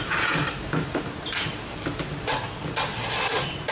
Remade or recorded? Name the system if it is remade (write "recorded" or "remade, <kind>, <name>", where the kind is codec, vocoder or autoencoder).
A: recorded